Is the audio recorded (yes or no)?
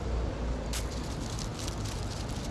yes